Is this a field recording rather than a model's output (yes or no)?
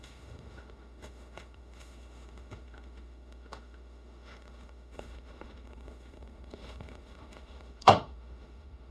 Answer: no